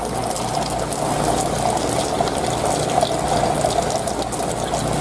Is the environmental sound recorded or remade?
recorded